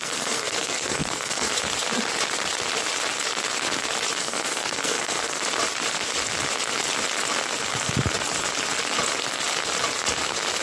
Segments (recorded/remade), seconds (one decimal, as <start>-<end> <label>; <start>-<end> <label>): 0.0-1.5 remade; 1.5-4.2 recorded; 4.2-5.4 remade; 5.4-10.6 recorded